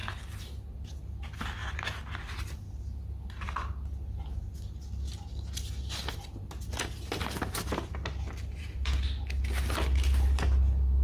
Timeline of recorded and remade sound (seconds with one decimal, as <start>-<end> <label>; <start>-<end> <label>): 0.0-11.0 recorded